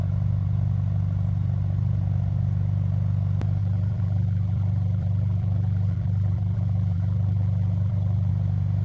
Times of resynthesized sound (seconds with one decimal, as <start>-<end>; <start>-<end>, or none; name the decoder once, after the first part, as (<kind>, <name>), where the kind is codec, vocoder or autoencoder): 3.6-8.3 (vocoder, BigVGAN v2)